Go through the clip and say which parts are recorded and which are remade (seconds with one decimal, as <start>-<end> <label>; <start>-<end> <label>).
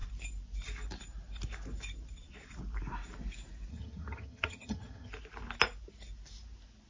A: 0.0-3.7 recorded; 3.7-5.1 remade; 5.1-6.9 recorded